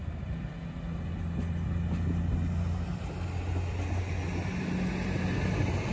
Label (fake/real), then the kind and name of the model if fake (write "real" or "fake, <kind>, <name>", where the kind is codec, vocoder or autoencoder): real